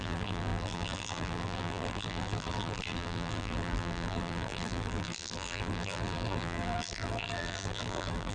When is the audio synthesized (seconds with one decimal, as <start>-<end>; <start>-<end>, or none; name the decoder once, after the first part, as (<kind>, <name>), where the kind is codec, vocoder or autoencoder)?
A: 0.0-8.3 (vocoder, BigVGAN v2)